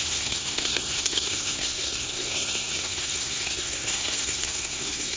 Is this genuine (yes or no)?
no